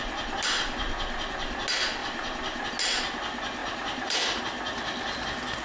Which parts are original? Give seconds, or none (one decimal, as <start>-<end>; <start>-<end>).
0.0-2.0; 2.7-3.6; 4.4-5.6